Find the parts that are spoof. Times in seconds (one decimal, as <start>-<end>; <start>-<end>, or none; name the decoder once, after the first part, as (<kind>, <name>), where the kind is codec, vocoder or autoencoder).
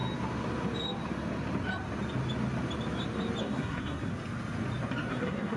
3.4-4.1 (codec, SNAC); 5.1-5.6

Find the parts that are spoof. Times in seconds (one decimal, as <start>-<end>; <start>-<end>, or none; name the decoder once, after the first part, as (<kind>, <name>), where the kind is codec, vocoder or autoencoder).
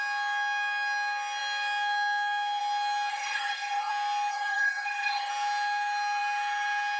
3.1-3.9 (codec, SNAC); 4.3-5.3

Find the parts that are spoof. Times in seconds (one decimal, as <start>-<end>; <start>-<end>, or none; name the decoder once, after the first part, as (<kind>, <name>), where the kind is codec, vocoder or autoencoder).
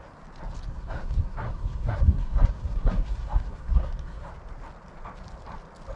0.7-4.3 (codec, SNAC)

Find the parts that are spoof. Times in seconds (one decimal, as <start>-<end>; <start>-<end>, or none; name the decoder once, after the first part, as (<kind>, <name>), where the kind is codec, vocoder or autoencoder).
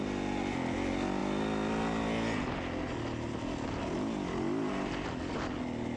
none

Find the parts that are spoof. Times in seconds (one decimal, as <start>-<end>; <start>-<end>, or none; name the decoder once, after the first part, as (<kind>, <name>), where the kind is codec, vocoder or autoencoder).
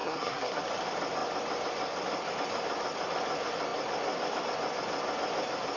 0.0-0.6 (codec, SNAC)